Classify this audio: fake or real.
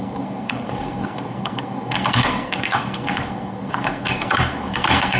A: fake